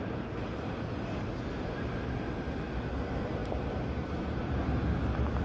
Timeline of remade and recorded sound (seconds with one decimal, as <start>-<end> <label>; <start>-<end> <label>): 0.0-4.4 remade; 4.4-5.4 recorded